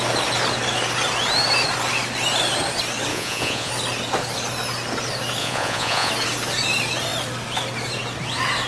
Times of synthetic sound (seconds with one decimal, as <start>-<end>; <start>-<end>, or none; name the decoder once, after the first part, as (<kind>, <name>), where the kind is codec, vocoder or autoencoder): 3.1-3.7 (vocoder, Vocos); 5.4-6.1

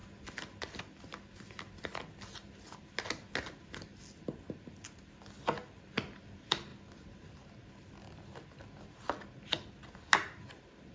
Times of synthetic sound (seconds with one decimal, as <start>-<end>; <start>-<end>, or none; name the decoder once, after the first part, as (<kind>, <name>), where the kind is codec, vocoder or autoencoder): none

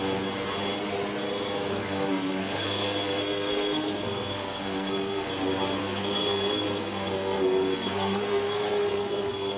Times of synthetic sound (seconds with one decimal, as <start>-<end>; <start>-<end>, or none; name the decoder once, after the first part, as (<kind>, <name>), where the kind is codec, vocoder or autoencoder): 1.7-5.3 (codec, SNAC); 5.8-9.6